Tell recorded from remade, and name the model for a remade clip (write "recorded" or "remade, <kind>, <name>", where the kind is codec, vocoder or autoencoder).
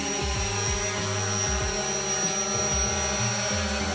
recorded